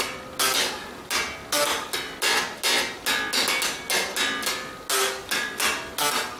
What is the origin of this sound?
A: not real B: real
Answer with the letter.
B